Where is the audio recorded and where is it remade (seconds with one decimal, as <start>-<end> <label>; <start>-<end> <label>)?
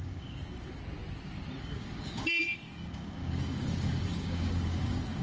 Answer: 0.0-0.8 remade; 0.8-1.6 recorded; 1.6-5.2 remade